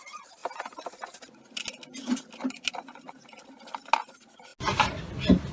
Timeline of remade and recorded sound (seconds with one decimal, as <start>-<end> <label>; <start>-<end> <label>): 0.0-5.5 recorded